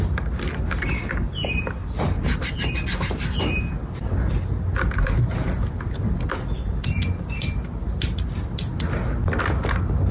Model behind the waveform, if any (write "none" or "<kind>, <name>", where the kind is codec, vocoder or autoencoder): none